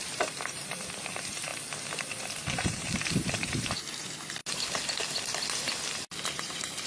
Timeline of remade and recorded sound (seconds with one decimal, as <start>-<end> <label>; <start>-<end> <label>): 0.0-1.5 remade; 1.5-2.2 recorded; 2.2-4.4 remade; 4.4-6.2 recorded; 6.2-6.9 remade